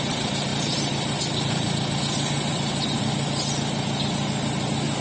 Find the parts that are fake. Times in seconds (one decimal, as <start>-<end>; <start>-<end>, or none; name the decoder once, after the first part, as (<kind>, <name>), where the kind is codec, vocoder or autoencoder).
none